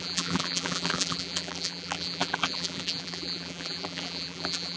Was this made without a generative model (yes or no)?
no